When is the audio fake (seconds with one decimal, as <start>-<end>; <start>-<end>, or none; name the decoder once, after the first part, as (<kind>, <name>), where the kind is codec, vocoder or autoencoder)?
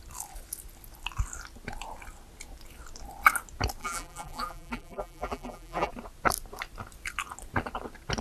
3.8-5.9 (vocoder, BigVGAN v2)